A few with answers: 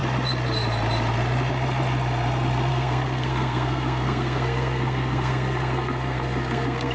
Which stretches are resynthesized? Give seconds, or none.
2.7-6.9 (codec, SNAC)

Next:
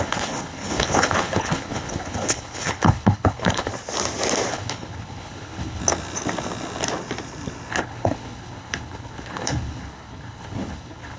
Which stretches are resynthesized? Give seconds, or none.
0.0-3.7 (codec, HILCodec); 4.5-5.8; 7.7-11.2

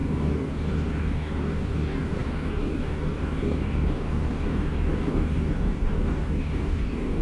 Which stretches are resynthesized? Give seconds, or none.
0.0-7.2 (codec, DAC)

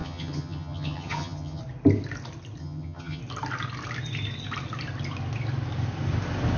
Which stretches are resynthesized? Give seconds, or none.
0.0-1.6 (vocoder, HiFi-GAN); 2.6-3.2

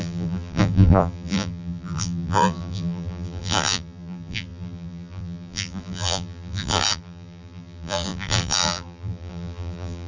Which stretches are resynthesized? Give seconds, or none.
0.0-10.1 (vocoder, BigVGAN v2)

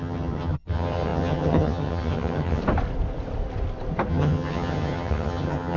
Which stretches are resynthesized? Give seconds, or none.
0.0-2.6 (vocoder, HiFi-GAN); 4.1-5.8

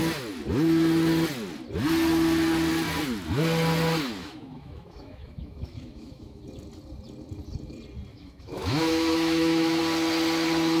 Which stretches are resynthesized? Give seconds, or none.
4.2-6.4 (autoencoder, DAC-VAE); 8.1-9.8

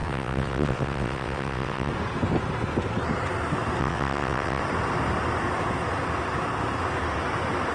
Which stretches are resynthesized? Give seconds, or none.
0.0-1.9 (vocoder, WaveNeXt); 3.8-4.6